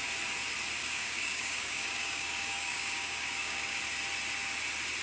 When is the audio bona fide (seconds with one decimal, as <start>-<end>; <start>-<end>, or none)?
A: 0.0-0.8; 3.8-5.0